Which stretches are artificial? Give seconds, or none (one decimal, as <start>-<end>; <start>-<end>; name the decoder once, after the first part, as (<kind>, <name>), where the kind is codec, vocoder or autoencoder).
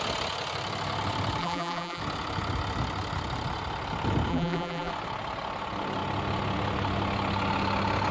1.4-2.0 (vocoder, BigVGAN v2); 4.3-4.9